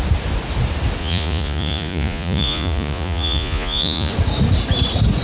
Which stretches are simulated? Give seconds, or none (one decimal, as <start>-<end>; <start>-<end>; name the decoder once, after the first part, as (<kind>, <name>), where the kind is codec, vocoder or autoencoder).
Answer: 1.0-4.1 (vocoder, Vocos)